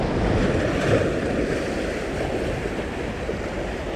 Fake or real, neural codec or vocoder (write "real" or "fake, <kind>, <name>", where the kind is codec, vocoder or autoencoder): real